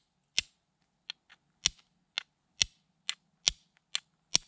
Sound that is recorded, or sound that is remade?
recorded